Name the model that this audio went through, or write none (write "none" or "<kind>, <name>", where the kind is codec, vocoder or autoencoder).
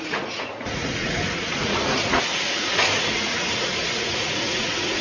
vocoder, Vocos